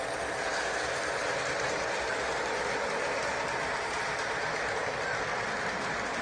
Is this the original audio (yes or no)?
yes